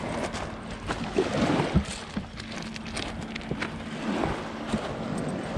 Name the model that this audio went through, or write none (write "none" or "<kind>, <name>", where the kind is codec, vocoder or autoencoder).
none